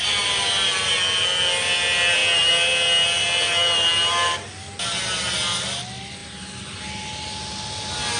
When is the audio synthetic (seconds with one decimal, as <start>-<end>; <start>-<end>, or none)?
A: none